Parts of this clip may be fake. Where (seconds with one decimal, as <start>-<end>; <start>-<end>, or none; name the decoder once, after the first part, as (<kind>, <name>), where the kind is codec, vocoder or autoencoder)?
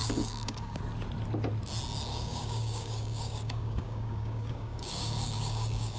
0.0-0.8 (codec, DAC); 2.1-6.0